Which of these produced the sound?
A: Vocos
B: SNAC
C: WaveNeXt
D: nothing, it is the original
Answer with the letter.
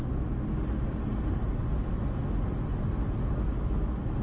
D